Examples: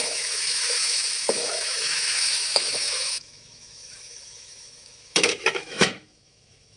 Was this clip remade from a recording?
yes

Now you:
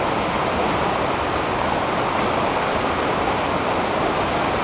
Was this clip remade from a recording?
no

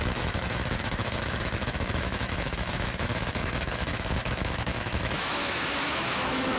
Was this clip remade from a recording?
yes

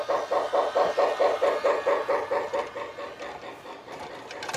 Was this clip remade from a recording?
no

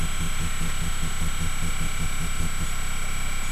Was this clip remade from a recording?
no